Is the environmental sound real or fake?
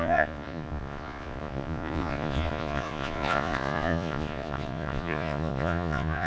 fake